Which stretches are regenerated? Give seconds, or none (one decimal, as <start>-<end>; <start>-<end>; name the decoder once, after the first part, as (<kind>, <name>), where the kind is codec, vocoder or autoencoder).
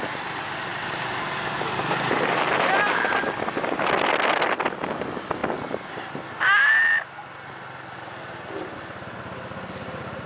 none